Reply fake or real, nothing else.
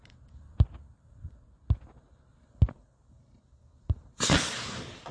real